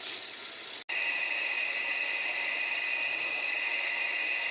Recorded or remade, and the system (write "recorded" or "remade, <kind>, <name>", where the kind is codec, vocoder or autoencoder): recorded